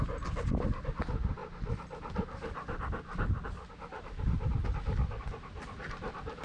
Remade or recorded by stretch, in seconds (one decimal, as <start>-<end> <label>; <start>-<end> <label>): 0.0-6.4 recorded